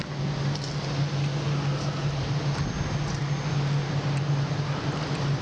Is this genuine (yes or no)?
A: yes